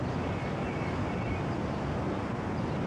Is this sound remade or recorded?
recorded